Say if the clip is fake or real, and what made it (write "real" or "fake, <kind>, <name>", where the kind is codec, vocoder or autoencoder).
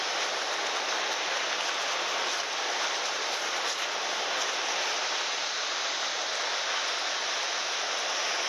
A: real